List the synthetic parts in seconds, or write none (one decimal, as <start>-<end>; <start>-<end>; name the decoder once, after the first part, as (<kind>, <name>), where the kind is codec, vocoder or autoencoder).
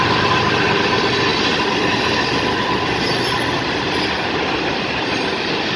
none